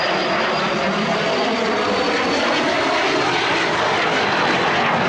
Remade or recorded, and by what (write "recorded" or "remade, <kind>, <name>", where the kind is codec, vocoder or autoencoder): recorded